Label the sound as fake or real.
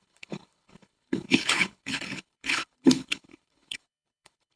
fake